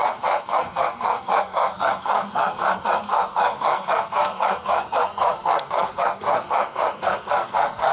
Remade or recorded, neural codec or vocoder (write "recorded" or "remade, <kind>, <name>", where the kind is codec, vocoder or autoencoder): remade, codec, SNAC